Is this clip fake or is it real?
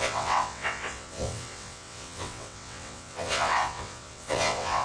fake